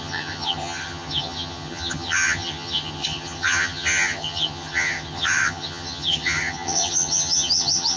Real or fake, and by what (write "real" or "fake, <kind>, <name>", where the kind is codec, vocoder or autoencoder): fake, vocoder, HiFi-GAN